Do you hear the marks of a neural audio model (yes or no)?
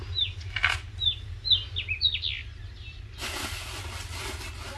no